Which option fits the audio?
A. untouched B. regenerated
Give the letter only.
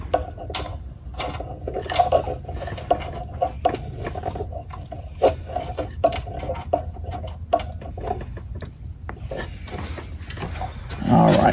A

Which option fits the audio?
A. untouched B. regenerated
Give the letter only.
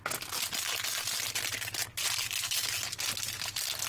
A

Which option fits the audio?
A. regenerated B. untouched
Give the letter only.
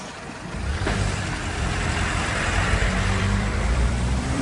A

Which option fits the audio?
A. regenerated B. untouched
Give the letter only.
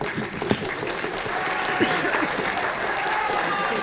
A